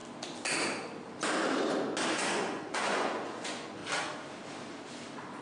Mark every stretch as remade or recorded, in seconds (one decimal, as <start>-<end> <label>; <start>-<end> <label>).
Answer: 0.0-2.1 recorded; 2.1-3.8 remade; 3.8-5.4 recorded